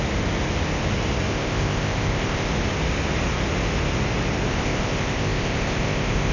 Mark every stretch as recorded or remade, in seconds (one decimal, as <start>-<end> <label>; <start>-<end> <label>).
0.0-1.3 recorded; 1.3-2.5 remade; 2.5-4.5 recorded; 4.5-6.3 remade